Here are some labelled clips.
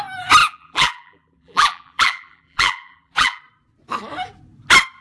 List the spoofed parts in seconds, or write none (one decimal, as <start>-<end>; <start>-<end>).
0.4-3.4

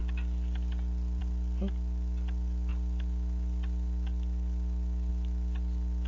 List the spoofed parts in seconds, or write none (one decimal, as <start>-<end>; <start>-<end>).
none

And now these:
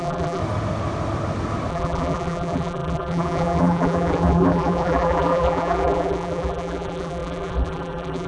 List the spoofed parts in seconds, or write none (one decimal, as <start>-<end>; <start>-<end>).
0.0-0.4; 1.7-8.3